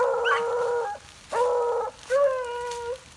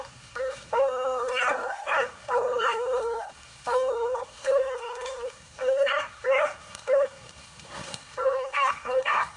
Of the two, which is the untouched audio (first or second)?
first